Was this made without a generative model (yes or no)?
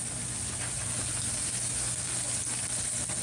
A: yes